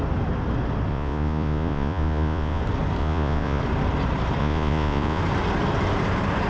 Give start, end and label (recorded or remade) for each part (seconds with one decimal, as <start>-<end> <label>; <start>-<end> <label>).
0.0-0.9 recorded; 0.9-2.6 remade; 2.6-3.0 recorded; 3.0-3.6 remade; 3.6-4.4 recorded; 4.4-5.2 remade; 5.2-6.5 recorded